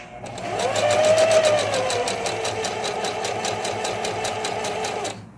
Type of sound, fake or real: real